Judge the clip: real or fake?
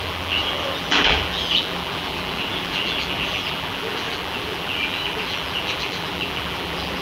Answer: fake